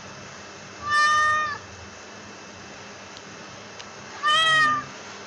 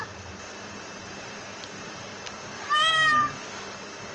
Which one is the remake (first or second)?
second